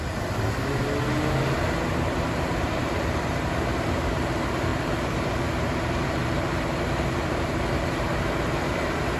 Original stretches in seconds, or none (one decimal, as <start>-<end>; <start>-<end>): 0.8-1.9; 8.1-8.7